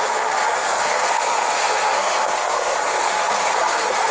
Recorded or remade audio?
remade